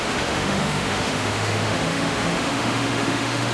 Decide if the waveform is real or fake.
fake